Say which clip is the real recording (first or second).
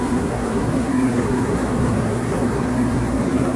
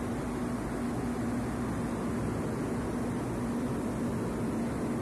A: second